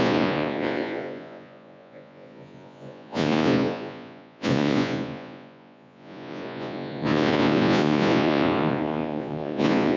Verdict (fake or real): fake